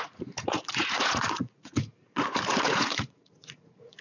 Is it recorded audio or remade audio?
remade